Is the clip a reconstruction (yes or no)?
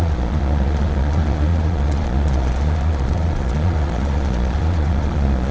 yes